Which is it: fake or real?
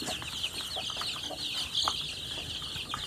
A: real